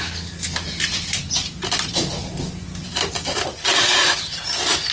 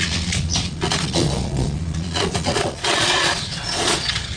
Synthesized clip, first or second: second